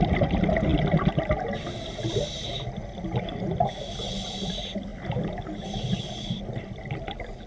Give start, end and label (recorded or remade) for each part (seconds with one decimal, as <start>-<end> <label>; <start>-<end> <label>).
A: 0.0-7.5 recorded